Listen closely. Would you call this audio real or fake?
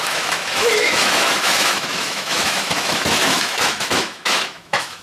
fake